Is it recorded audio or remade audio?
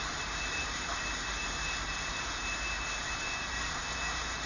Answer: remade